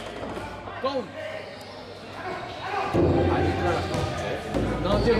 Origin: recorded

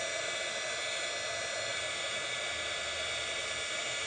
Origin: recorded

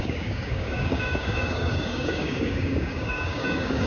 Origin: remade